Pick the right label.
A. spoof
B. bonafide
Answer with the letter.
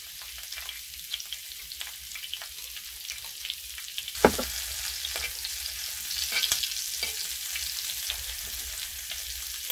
B